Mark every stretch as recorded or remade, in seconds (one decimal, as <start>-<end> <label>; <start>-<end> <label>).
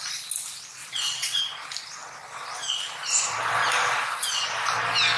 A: 0.0-0.8 recorded; 0.8-1.4 remade; 1.4-5.2 recorded